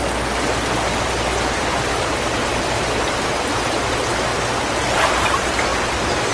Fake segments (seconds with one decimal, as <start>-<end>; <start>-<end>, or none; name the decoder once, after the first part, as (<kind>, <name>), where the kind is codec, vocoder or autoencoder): 1.4-4.3 (vocoder, BigVGAN v2); 5.1-6.3